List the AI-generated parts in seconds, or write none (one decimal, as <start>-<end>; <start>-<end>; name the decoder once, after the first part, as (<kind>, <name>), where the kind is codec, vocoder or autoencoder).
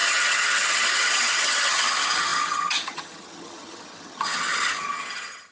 0.0-5.5 (vocoder, HiFi-GAN)